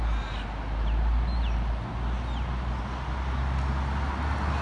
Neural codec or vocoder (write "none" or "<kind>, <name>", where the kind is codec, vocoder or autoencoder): none